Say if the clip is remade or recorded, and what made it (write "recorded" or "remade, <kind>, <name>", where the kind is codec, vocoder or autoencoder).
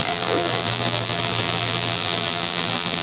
remade, vocoder, BigVGAN v2